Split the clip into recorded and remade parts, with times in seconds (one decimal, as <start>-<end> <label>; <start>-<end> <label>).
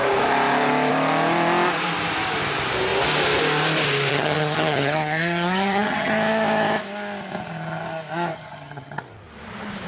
0.0-4.1 recorded; 4.1-6.1 remade; 6.1-8.3 recorded; 8.3-9.0 remade; 9.0-9.9 recorded